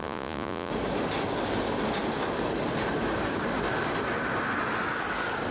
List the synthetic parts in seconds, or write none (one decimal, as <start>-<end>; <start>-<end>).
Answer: 0.0-0.7